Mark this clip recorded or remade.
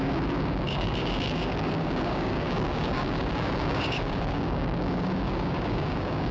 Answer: remade